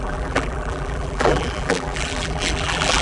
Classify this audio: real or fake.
fake